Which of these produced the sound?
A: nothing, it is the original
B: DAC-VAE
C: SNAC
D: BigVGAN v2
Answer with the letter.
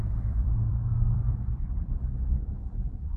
D